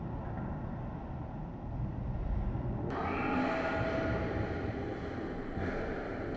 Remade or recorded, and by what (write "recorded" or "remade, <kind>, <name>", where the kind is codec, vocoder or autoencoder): recorded